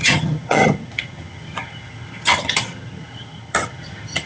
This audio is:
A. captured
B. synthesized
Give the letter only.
B